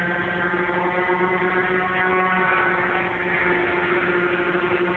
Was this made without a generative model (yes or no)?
yes